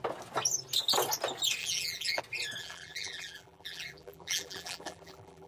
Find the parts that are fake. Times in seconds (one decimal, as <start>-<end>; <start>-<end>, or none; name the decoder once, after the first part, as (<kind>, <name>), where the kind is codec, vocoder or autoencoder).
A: 1.6-2.2 (vocoder, BigVGAN v2); 2.6-5.5